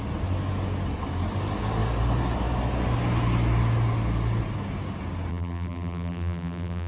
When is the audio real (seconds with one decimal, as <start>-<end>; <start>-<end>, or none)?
0.0-5.3